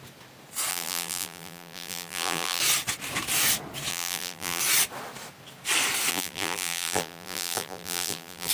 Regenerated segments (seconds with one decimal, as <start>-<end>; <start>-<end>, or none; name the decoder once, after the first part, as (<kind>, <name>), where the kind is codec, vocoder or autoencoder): 0.7-2.6 (vocoder, BigVGAN v2); 3.9-4.6; 6.1-8.5